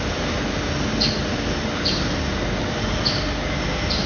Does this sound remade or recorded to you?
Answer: recorded